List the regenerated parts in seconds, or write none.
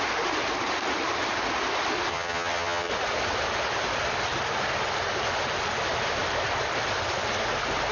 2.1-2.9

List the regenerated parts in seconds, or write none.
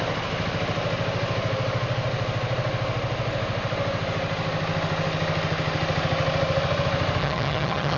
7.2-8.0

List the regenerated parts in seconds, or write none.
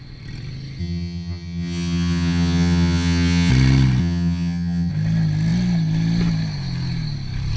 0.8-3.5; 4.0-4.9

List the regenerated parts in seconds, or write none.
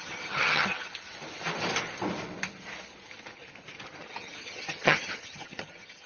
0.0-0.9; 4.0-6.1